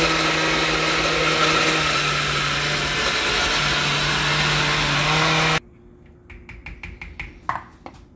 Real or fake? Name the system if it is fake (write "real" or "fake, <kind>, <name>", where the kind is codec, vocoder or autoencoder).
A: real